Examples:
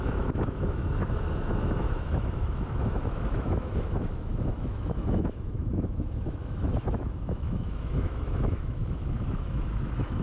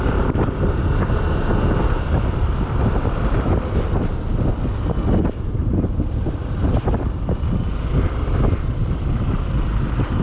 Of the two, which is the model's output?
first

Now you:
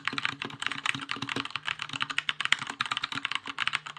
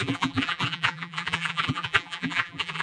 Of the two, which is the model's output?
second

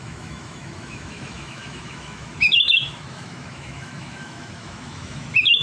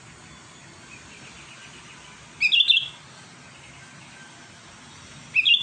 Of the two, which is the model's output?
first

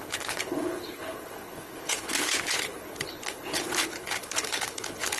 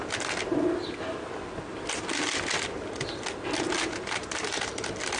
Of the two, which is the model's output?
first